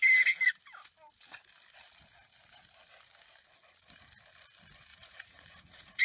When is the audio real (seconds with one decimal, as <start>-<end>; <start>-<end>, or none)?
0.0-4.9